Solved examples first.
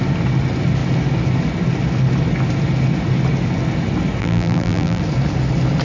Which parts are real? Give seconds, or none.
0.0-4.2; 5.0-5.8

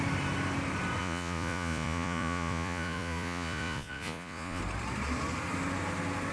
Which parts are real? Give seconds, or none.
0.0-1.0; 4.6-6.3

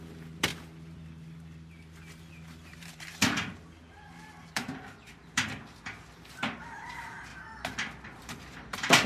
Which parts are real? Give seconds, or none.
0.5-2.3; 7.3-8.2

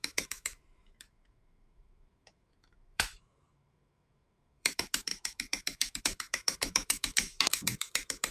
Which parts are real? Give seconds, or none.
none

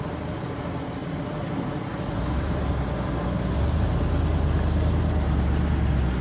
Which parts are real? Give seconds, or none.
0.0-6.2

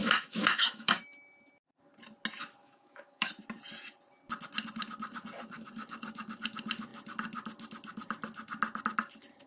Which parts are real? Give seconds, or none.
1.0-2.6; 3.3-9.5

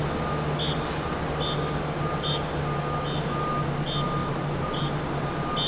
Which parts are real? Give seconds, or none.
0.0-4.2; 4.9-5.7